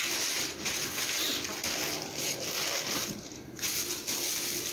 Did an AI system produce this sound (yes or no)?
no